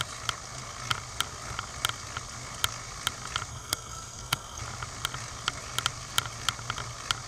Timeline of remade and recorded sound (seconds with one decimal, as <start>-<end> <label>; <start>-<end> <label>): 0.0-3.5 recorded; 3.5-4.6 remade; 4.6-7.3 recorded